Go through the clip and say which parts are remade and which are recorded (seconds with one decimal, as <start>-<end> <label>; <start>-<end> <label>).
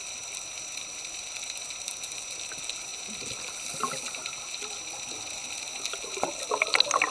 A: 0.0-7.1 recorded